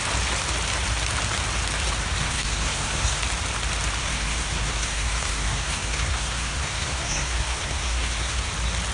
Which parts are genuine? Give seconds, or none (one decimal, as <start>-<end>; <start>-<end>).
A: 0.0-2.2; 3.2-4.0; 8.5-8.9